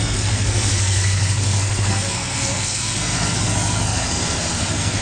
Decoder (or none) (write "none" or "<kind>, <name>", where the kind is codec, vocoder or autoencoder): codec, SNAC